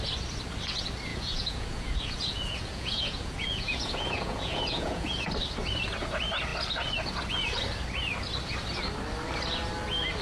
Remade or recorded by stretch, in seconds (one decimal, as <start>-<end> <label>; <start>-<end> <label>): 0.0-1.1 recorded; 1.1-5.3 remade; 5.3-10.2 recorded